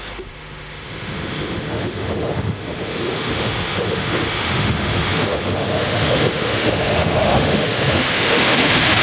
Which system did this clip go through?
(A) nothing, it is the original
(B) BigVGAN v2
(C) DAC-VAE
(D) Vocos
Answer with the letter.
C